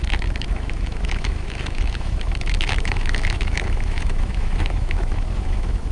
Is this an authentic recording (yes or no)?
no